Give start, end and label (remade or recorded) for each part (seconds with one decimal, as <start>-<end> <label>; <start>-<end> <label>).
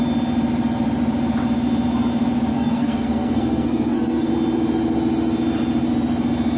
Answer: 0.0-2.5 recorded; 2.5-4.3 remade; 4.3-6.6 recorded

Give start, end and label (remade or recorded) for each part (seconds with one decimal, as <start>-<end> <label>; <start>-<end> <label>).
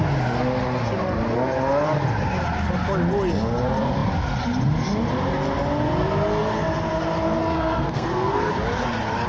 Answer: 0.0-7.4 recorded; 7.4-8.5 remade; 8.5-9.3 recorded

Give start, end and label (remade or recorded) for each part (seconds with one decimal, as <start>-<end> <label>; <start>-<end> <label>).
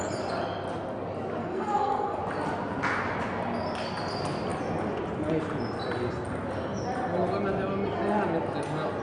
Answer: 0.0-1.4 recorded; 1.4-2.2 remade; 2.2-9.0 recorded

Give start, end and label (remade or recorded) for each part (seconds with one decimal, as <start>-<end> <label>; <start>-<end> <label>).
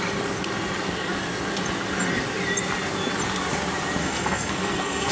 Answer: 0.0-4.0 recorded; 4.0-5.1 remade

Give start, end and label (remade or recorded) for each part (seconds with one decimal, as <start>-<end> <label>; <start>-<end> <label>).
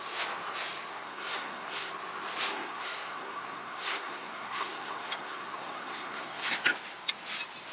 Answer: 0.0-0.9 recorded; 0.9-1.9 remade; 1.9-2.5 recorded; 2.5-6.5 remade; 6.5-7.7 recorded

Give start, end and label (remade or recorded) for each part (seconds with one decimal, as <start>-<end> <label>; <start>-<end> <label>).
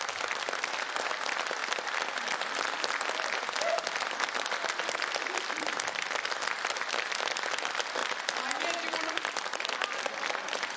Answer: 0.0-10.8 recorded